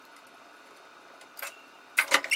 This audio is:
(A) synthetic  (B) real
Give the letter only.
B